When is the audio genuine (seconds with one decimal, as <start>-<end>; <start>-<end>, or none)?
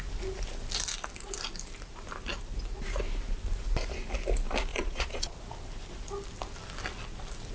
0.0-4.7; 5.4-7.5